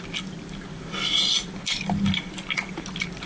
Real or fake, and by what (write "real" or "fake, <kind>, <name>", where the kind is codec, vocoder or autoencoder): real